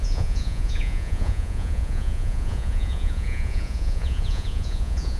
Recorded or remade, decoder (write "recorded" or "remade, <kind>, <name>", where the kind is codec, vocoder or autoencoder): remade, vocoder, Vocos